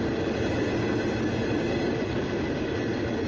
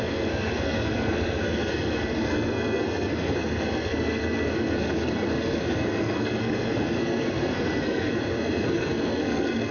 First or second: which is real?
first